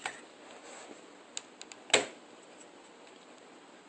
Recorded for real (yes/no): yes